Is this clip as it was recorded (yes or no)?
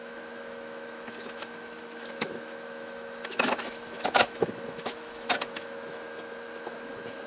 no